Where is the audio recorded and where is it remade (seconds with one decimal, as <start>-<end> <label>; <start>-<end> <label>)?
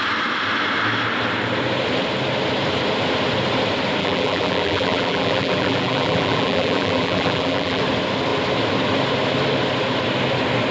0.0-4.0 recorded; 4.0-7.8 remade; 7.8-10.7 recorded